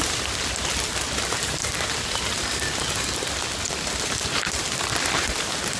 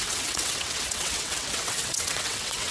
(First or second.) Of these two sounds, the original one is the first